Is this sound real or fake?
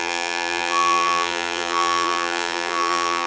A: fake